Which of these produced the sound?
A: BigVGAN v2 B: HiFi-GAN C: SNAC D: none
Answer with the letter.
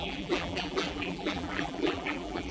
A